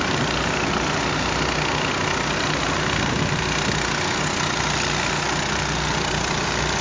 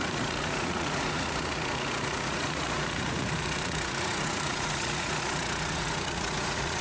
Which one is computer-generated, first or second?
second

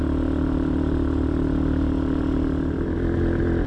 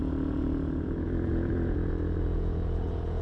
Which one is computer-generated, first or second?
second